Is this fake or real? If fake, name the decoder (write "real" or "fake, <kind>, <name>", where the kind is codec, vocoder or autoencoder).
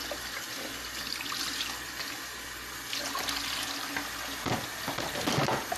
real